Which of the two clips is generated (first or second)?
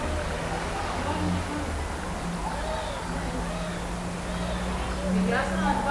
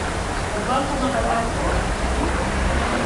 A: second